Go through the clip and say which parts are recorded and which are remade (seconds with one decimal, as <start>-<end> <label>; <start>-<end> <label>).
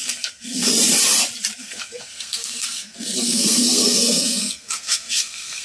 0.0-0.7 remade; 0.7-1.6 recorded; 1.6-5.6 remade